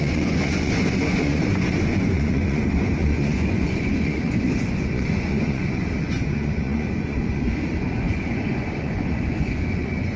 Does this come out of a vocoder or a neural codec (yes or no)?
yes